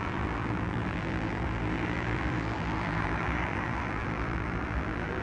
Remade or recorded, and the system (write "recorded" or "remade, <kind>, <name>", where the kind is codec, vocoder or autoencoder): remade, vocoder, BigVGAN v2